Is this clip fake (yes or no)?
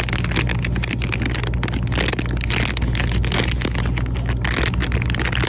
no